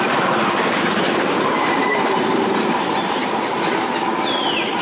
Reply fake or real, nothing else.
fake